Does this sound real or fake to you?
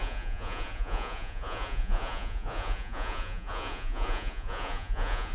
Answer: fake